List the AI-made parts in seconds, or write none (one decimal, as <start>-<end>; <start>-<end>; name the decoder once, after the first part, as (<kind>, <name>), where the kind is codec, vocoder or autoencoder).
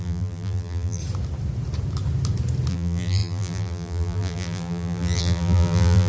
0.0-1.0 (vocoder, BigVGAN v2); 2.7-6.1